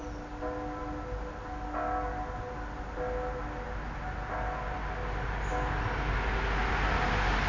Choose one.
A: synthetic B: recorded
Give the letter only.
B